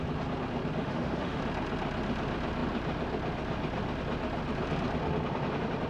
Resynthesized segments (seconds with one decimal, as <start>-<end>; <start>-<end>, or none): 0.8-1.4